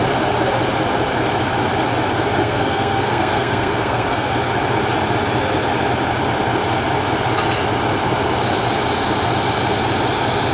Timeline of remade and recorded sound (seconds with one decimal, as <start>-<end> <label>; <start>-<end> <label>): 0.0-2.4 recorded; 2.4-4.3 remade; 4.3-10.5 recorded